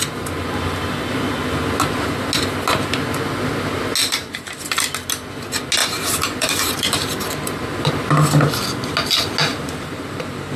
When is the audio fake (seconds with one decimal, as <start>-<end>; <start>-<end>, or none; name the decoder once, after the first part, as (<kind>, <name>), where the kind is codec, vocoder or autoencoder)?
4.0-4.6 (vocoder, BigVGAN v2); 5.8-7.9; 9.5-10.6